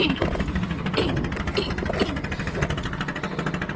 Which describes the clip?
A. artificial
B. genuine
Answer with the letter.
B